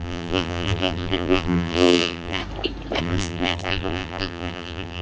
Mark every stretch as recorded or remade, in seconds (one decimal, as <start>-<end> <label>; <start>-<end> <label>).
0.0-2.4 remade; 2.4-3.0 recorded; 3.0-5.0 remade